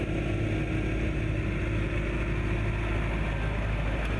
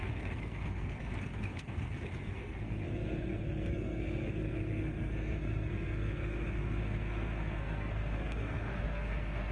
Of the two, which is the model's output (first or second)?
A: second